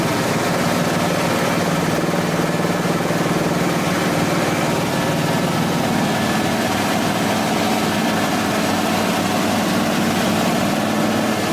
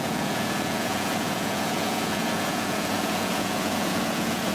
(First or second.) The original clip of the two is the first